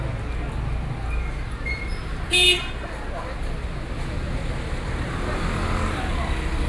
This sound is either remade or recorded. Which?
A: recorded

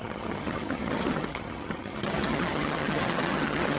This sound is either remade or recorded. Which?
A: remade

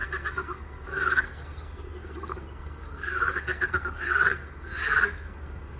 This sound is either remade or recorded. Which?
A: remade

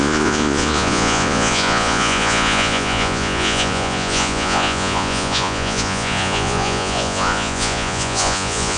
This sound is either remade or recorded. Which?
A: remade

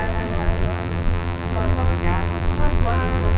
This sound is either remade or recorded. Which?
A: remade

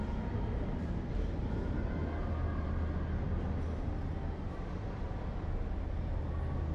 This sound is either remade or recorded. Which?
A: recorded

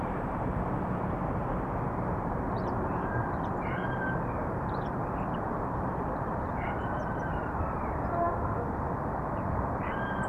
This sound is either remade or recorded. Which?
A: remade